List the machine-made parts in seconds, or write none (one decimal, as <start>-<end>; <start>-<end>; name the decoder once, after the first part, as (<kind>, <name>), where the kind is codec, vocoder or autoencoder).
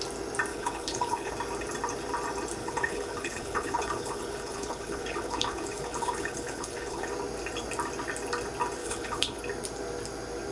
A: 0.5-1.3 (codec, HILCodec); 2.6-7.1; 8.8-9.4